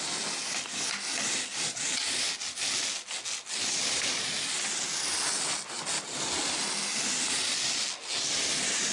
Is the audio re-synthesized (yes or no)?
no